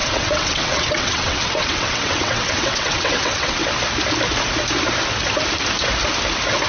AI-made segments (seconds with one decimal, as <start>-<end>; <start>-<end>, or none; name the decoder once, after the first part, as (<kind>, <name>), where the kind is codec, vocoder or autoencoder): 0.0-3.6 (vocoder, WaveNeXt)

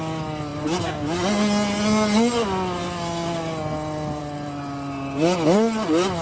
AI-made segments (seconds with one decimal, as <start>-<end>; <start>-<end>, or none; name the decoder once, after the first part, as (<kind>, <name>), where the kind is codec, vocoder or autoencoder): none

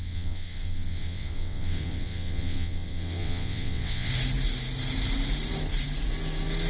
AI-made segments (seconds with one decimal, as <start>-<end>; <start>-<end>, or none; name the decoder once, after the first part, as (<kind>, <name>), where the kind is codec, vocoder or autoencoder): 0.0-4.1 (vocoder, WaveNeXt)

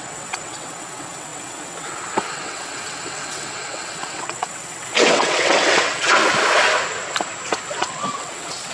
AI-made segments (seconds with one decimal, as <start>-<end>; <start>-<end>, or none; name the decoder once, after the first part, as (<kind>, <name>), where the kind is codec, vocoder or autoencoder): 0.0-6.2 (vocoder, WaveNeXt); 7.7-8.7

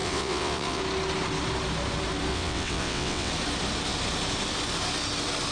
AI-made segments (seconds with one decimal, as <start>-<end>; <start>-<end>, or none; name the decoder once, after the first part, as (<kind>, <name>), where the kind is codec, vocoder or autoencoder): 0.0-0.8 (vocoder, WaveNeXt); 2.3-3.3

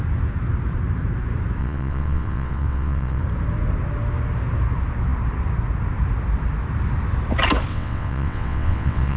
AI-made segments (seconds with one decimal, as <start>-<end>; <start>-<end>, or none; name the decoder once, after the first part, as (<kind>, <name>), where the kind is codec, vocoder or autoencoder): 1.6-3.2 (vocoder, WaveNeXt); 7.7-9.2

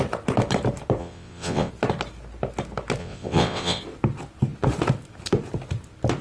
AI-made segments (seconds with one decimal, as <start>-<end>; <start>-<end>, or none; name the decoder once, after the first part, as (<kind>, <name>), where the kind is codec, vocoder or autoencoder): 1.0-1.7 (vocoder, WaveNeXt); 3.0-3.8

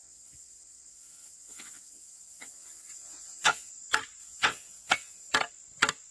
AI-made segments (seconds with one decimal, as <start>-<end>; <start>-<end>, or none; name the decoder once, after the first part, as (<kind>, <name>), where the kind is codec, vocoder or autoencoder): 0.0-3.7 (vocoder, WaveNeXt); 4.2-5.3